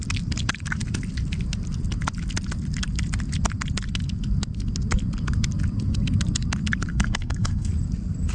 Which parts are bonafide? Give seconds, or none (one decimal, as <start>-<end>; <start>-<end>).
0.0-6.9; 7.7-8.3